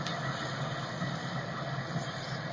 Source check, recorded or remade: recorded